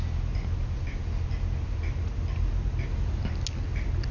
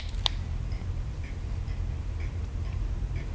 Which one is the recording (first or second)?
first